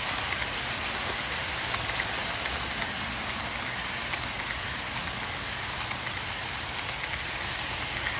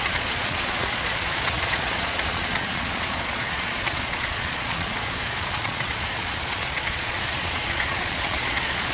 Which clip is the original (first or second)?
first